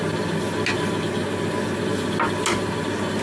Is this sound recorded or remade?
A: recorded